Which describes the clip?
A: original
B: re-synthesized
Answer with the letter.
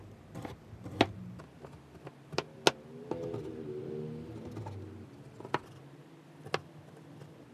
A